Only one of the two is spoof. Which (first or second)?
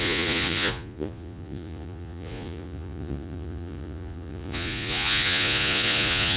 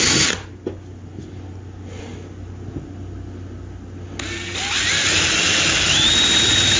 first